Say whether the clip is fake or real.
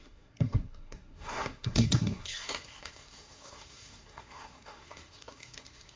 fake